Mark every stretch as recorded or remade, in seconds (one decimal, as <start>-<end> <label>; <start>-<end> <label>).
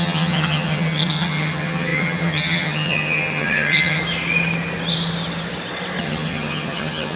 0.0-4.0 remade; 4.0-6.0 recorded; 6.0-7.2 remade